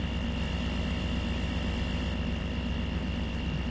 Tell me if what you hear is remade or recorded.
recorded